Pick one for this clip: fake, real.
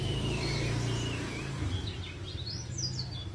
fake